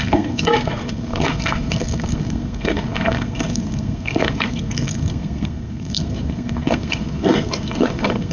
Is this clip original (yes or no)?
no